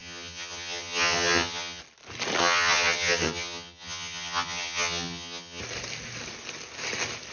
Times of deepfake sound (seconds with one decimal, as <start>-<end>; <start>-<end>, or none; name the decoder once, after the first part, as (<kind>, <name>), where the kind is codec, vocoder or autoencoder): 0.0-1.8 (vocoder, HiFi-GAN); 2.4-5.6